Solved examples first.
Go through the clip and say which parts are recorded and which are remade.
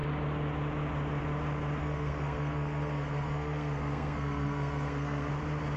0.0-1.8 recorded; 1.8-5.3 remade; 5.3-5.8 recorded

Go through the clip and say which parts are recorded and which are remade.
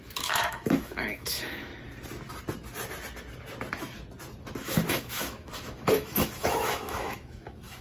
0.0-1.7 remade; 1.7-4.6 recorded; 4.6-7.8 remade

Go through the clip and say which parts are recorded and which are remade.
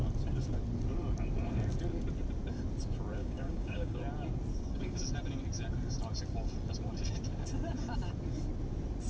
0.0-3.2 recorded; 3.2-4.0 remade; 4.0-4.5 recorded; 4.5-5.0 remade; 5.0-9.1 recorded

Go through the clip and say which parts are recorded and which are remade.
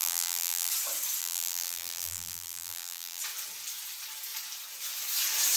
0.0-0.7 remade; 0.7-1.2 recorded; 1.2-3.2 remade; 3.2-5.6 recorded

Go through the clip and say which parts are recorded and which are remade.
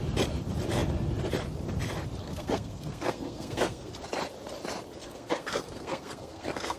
0.0-2.2 recorded; 2.2-3.9 remade; 3.9-5.0 recorded; 5.0-6.8 remade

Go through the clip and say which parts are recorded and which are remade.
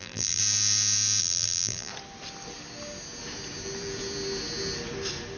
0.0-0.4 remade; 0.4-1.2 recorded; 1.2-1.9 remade; 1.9-5.4 recorded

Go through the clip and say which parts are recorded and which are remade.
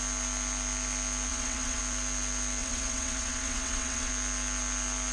0.0-1.3 recorded; 1.3-1.8 remade; 1.8-2.6 recorded; 2.6-4.1 remade; 4.1-5.1 recorded